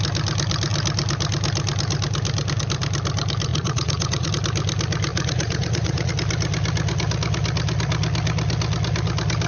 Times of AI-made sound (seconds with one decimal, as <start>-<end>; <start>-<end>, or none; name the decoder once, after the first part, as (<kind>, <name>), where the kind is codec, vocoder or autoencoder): 3.5-4.3 (vocoder, Vocos); 5.1-6.1